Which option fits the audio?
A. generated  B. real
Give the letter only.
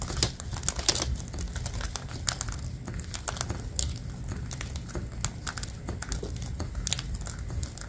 B